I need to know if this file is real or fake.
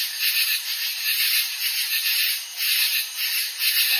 fake